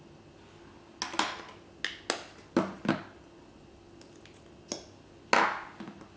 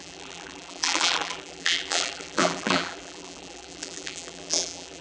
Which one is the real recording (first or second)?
first